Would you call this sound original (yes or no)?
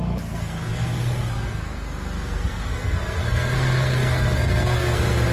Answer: no